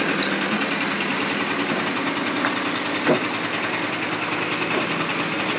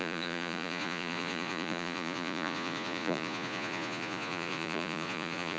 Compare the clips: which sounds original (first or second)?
first